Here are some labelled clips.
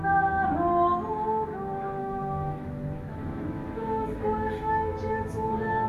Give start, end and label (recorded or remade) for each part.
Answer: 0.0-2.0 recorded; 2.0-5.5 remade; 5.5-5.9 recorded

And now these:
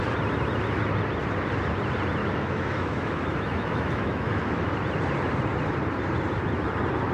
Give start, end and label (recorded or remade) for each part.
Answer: 0.0-2.2 recorded; 2.2-4.7 remade; 4.7-7.1 recorded

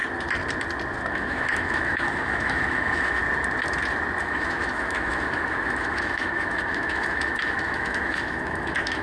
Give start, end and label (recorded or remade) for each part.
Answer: 0.0-1.1 recorded; 1.1-3.2 remade; 3.2-4.2 recorded; 4.2-9.0 remade

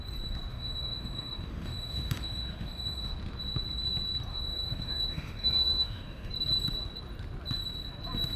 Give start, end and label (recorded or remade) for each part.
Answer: 0.0-0.5 recorded; 0.5-3.1 remade; 3.1-4.3 recorded; 4.3-6.3 remade; 6.3-8.4 recorded

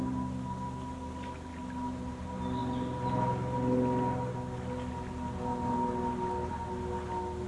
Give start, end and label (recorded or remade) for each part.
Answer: 0.0-7.5 recorded

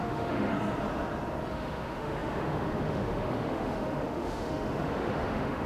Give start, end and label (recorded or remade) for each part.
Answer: 0.0-0.5 remade; 0.5-1.5 recorded; 1.5-5.7 remade

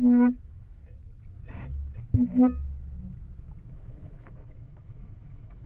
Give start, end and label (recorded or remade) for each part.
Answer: 0.0-0.8 remade; 0.8-3.7 recorded; 3.7-5.7 remade

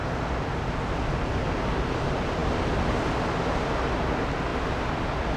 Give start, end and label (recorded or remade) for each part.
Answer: 0.0-5.4 recorded